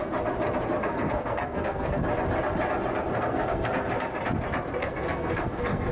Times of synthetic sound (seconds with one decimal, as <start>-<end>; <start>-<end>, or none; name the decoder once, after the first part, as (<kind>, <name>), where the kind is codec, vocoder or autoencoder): 0.8-2.0 (codec, SNAC); 3.1-3.7; 4.8-5.9